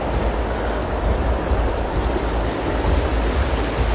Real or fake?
real